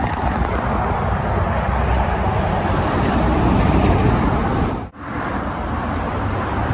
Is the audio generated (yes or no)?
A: yes